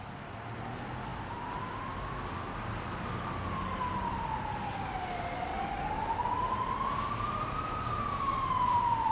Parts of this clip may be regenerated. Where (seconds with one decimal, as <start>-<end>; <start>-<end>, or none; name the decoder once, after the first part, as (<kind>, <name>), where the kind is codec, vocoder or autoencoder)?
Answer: 5.5-6.2 (codec, DAC)